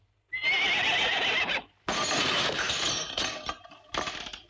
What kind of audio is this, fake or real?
real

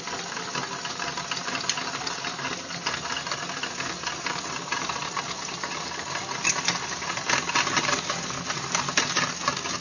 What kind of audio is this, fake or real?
real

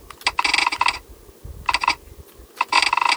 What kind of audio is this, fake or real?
real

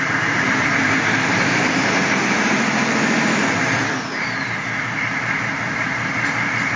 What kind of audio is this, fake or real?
fake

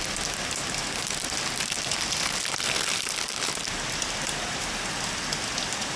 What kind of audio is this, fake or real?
real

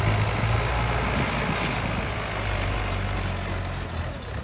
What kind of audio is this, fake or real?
real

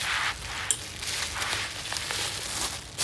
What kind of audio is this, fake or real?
real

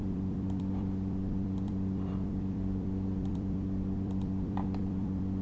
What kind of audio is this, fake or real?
fake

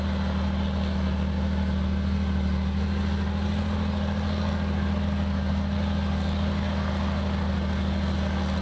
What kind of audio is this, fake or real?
real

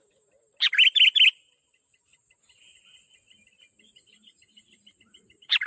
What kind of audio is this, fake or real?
real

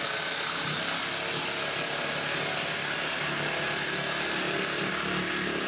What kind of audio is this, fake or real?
real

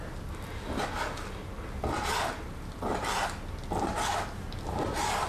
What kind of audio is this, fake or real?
real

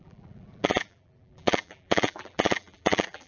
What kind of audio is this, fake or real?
fake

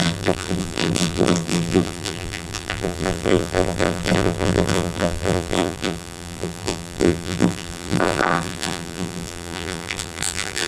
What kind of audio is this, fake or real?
fake